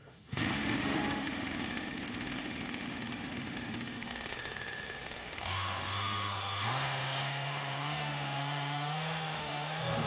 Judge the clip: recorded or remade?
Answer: remade